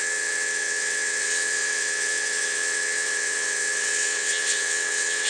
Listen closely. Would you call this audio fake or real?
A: fake